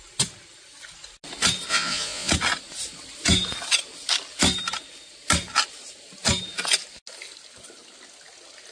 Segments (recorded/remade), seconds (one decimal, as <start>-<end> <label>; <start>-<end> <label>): 0.0-1.7 recorded; 1.7-2.3 remade; 2.3-8.7 recorded